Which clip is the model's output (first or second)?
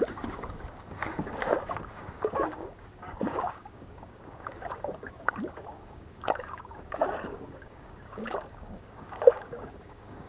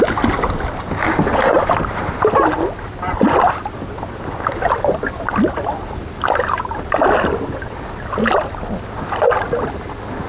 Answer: first